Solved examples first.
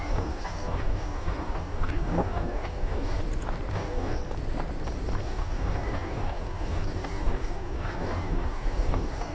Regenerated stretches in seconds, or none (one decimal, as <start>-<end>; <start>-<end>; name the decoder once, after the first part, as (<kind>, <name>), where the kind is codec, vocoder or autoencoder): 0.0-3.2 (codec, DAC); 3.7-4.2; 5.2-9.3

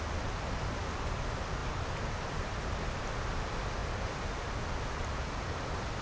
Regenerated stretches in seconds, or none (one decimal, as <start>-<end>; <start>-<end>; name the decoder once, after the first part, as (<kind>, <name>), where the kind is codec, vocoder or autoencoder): none

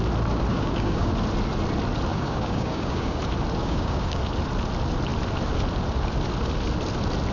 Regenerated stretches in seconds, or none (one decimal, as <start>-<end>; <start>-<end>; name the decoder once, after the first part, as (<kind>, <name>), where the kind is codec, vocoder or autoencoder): 0.5-1.1 (codec, DAC); 2.1-3.2; 3.6-4.2